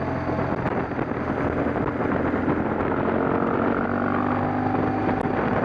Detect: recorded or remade recorded